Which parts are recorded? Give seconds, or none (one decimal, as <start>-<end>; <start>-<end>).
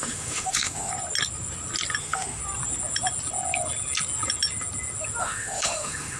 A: 0.9-2.0; 2.4-5.2